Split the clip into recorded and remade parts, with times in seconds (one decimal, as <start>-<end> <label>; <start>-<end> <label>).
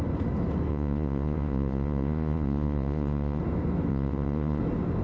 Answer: 0.0-0.7 recorded; 0.7-3.4 remade; 3.4-3.9 recorded; 3.9-4.6 remade; 4.6-5.0 recorded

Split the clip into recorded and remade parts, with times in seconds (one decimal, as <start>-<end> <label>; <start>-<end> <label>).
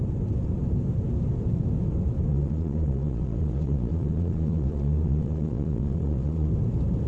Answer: 0.0-2.3 recorded; 2.3-6.5 remade; 6.5-7.1 recorded